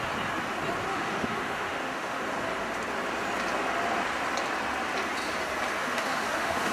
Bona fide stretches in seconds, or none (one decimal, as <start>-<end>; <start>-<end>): 0.0-0.9; 2.2-5.8